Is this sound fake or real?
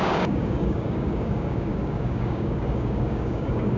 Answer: fake